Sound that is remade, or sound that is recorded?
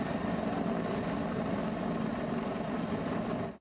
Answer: recorded